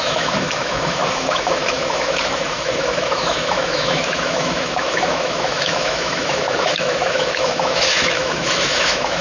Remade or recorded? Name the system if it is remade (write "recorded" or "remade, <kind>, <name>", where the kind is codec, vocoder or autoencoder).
remade, autoencoder, DAC-VAE